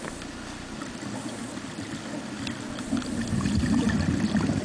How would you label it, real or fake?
real